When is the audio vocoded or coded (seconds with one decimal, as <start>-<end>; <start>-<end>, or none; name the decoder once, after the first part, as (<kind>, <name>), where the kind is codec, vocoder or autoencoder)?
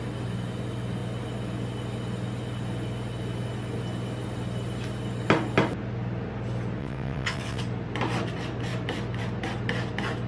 6.8-7.6 (vocoder, WaveNeXt)